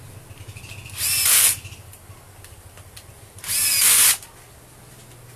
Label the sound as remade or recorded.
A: recorded